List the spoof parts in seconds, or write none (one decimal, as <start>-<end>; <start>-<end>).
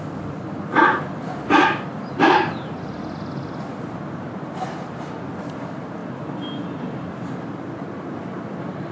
none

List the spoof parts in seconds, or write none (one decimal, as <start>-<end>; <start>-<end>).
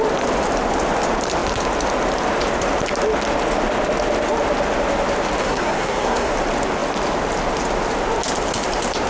5.4-6.3